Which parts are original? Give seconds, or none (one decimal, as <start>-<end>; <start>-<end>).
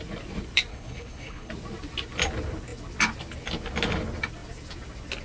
0.0-0.7; 1.5-5.2